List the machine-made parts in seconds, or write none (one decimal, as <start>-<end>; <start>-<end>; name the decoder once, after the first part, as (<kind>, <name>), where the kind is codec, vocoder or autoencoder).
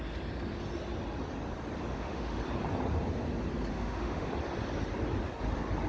1.9-2.4 (autoencoder, DAC-VAE); 3.7-4.3